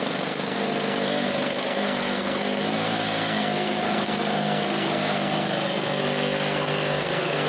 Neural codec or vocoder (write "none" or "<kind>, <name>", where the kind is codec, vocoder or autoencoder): codec, SNAC